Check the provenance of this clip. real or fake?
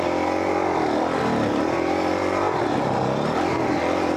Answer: real